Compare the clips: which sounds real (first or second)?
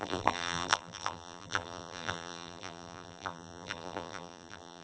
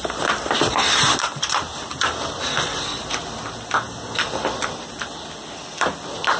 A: second